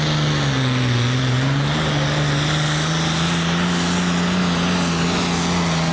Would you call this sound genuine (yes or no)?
yes